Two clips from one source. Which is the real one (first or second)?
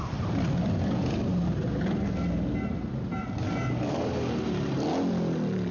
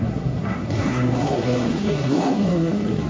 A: first